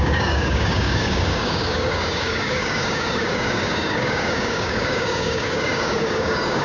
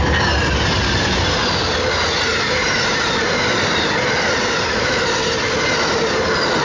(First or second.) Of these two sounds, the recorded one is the second